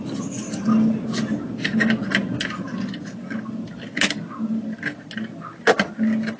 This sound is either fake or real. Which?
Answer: real